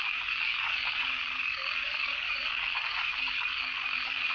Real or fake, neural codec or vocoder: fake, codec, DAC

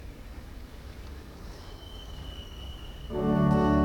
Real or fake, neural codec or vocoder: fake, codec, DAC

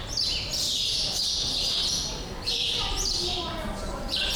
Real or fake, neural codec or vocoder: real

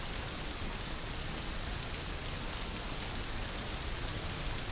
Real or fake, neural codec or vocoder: real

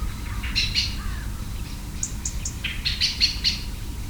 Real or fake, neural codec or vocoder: real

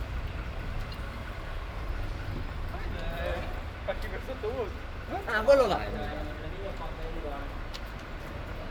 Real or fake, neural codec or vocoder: real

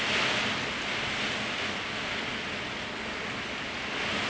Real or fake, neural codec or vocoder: real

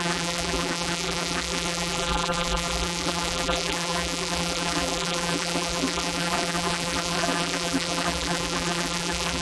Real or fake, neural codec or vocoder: fake, vocoder, BigVGAN v2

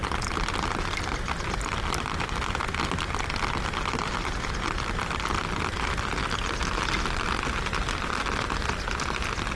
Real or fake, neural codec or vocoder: real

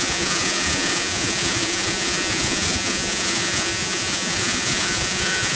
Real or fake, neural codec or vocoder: fake, vocoder, Vocos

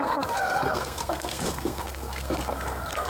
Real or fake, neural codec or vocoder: fake, codec, SNAC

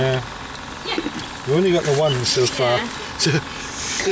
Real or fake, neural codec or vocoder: real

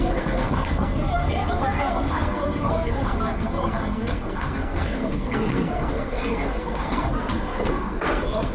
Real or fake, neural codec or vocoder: fake, codec, SNAC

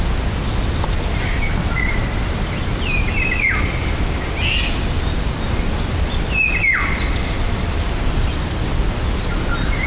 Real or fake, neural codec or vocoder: real